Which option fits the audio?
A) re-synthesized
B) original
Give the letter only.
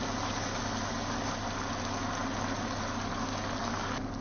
B